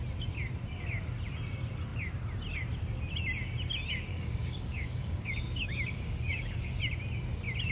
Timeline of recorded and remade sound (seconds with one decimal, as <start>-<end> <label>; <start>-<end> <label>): 0.0-4.1 recorded; 4.1-6.8 remade; 6.8-7.7 recorded